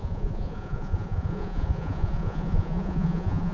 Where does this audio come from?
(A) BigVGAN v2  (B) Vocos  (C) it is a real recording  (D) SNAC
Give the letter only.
B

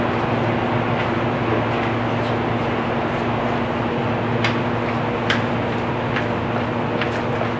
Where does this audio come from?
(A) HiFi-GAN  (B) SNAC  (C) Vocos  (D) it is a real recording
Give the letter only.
D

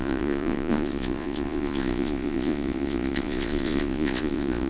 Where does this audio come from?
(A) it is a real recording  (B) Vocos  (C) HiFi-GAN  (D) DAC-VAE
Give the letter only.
B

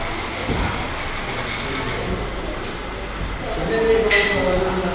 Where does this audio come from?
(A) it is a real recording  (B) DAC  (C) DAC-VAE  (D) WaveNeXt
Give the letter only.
A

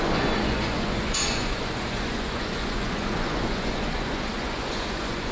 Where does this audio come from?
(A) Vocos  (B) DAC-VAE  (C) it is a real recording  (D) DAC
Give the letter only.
A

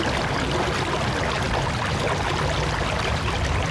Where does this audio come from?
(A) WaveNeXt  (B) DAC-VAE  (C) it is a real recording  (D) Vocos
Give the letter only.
C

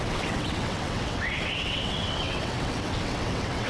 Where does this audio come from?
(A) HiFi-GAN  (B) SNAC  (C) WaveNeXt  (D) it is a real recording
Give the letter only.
C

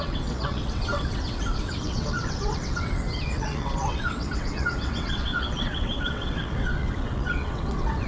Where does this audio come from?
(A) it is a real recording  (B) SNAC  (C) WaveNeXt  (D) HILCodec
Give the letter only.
C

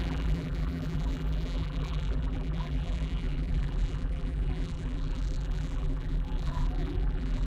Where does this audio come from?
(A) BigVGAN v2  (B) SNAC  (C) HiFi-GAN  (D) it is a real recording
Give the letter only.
A